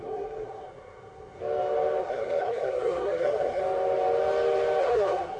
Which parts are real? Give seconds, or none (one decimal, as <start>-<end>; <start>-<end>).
1.4-2.0; 3.6-4.8